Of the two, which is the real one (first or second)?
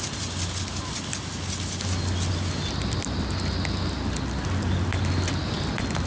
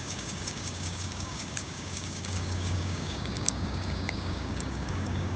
first